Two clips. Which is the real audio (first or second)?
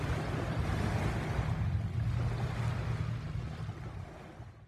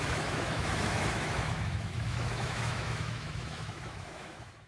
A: first